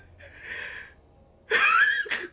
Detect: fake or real real